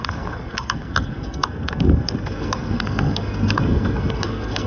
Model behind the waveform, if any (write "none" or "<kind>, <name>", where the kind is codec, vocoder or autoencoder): codec, SNAC